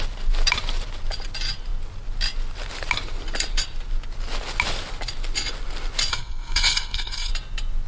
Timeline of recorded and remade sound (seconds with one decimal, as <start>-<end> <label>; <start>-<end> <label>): 0.0-6.1 recorded; 6.1-7.3 remade; 7.3-7.9 recorded